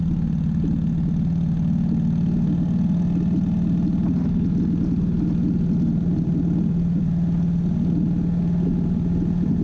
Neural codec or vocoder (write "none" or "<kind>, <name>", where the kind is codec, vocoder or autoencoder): none